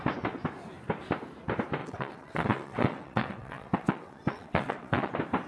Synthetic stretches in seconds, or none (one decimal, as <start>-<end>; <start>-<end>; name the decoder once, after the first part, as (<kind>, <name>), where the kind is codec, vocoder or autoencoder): 1.8-5.1 (vocoder, WaveNeXt)